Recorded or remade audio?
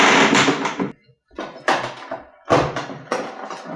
recorded